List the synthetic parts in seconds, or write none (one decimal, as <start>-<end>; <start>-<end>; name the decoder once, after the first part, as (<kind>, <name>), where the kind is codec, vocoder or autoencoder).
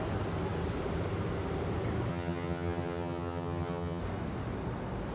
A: 2.1-4.0 (vocoder, HiFi-GAN)